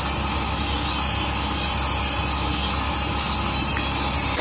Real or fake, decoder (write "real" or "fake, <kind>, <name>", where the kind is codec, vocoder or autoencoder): real